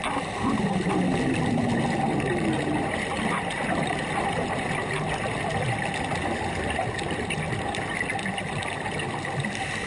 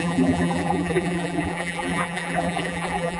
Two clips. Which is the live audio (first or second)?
first